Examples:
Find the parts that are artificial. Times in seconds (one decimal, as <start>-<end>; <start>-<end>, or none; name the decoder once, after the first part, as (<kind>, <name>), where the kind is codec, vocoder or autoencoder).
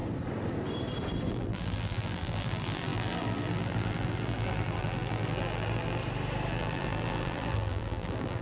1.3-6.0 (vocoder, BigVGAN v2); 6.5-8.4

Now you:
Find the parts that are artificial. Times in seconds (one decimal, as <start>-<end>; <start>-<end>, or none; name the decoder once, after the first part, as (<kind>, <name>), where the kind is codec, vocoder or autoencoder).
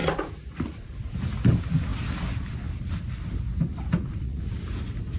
0.0-0.9 (vocoder, Vocos); 3.7-4.5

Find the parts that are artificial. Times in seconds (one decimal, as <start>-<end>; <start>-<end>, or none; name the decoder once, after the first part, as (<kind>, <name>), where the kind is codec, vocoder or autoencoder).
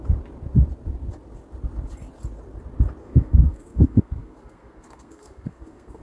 3.0-6.0 (codec, SNAC)